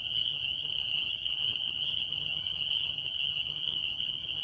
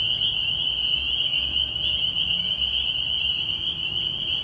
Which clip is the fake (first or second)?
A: first